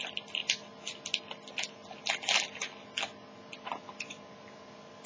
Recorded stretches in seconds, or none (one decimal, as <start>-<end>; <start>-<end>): 0.0-5.1